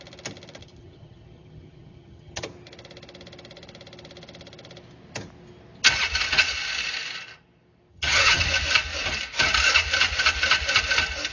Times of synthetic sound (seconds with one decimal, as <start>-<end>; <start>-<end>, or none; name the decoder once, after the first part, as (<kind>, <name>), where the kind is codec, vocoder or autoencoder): 0.6-2.4 (vocoder, HiFi-GAN); 7.9-8.4